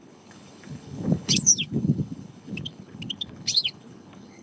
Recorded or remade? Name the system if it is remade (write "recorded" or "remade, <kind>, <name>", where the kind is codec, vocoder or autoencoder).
remade, codec, HILCodec